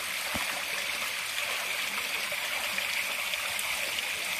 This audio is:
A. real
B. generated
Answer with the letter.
A